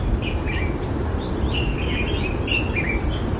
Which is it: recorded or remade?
recorded